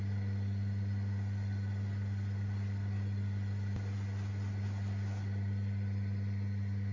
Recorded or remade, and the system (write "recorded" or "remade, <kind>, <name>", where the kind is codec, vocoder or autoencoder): recorded